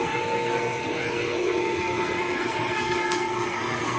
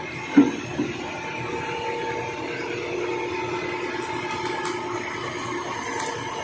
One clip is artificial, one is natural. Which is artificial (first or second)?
first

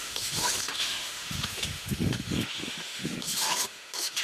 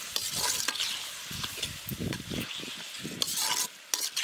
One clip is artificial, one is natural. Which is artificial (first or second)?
first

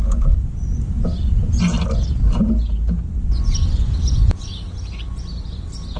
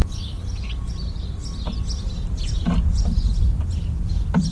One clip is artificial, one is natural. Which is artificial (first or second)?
second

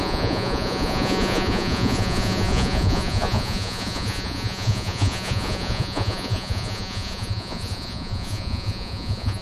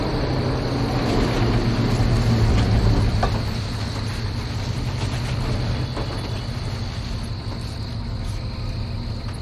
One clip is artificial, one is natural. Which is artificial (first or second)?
first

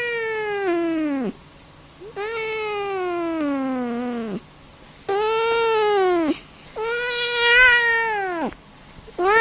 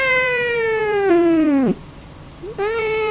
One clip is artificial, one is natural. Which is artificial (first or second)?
second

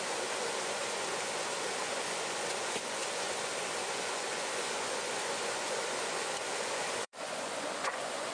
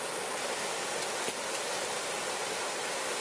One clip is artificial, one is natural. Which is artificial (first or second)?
first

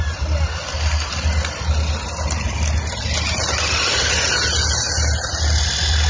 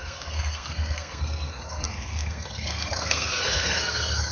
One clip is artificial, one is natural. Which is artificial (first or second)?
second